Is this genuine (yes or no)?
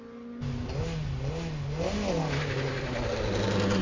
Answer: yes